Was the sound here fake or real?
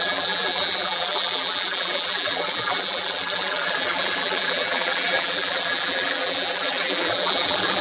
fake